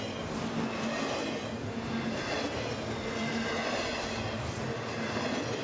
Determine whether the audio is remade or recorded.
recorded